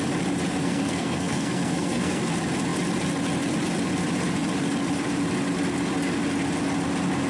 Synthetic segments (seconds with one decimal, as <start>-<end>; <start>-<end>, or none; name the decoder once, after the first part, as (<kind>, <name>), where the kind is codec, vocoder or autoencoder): 0.6-2.2 (codec, SNAC)